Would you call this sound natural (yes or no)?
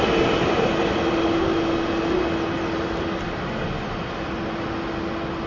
yes